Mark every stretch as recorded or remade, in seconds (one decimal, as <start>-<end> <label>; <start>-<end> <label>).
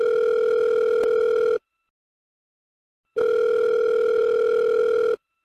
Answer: 0.0-5.4 recorded